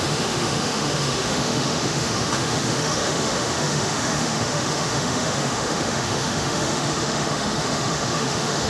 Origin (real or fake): fake